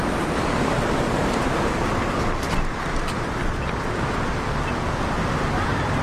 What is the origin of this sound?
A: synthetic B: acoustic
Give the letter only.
B